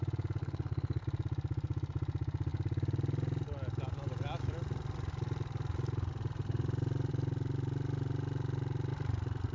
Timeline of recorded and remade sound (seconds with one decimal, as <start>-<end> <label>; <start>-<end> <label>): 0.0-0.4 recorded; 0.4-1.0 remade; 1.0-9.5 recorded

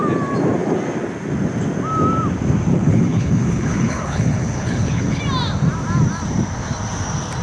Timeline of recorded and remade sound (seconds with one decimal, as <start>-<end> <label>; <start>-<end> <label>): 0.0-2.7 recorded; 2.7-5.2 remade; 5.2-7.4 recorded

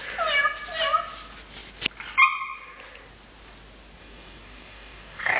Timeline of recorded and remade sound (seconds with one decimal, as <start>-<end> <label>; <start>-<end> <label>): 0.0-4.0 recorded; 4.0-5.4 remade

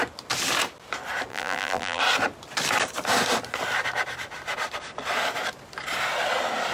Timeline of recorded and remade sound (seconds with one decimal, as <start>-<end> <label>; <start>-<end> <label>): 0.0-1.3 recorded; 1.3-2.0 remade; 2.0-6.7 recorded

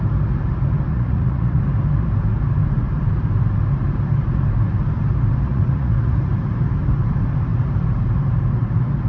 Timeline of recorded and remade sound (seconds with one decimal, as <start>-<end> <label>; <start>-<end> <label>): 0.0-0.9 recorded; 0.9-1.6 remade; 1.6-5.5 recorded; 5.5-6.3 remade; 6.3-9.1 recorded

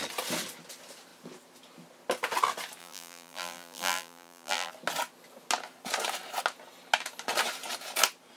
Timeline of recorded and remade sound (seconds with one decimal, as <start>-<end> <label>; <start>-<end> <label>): 0.0-2.8 recorded; 2.8-4.7 remade; 4.7-8.4 recorded

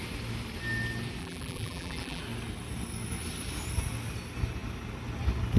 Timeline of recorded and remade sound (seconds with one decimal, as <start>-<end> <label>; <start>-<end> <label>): 0.0-1.2 recorded; 1.2-2.2 remade; 2.2-5.6 recorded